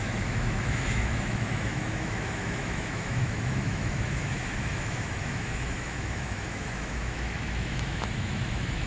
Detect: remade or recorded remade